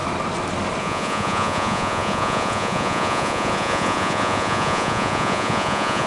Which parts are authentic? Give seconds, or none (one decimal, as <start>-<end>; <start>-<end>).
0.0-0.8